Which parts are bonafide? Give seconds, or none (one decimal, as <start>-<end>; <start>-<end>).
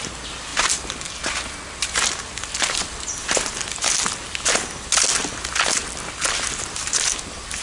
0.0-7.6